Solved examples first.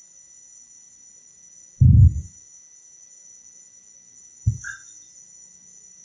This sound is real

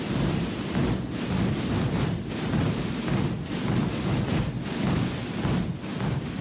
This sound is real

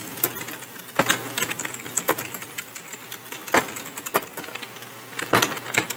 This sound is real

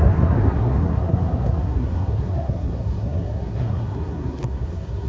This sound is fake